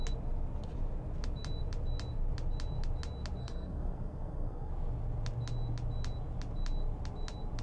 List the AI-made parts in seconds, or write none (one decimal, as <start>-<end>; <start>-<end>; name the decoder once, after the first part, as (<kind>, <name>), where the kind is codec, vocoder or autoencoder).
3.4-4.7 (codec, SNAC)